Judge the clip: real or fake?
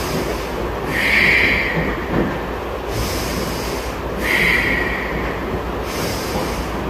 real